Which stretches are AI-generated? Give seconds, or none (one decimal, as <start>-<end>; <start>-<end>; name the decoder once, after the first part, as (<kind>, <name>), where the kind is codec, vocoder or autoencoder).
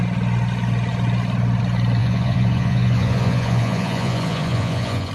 2.0-5.1 (vocoder, Vocos)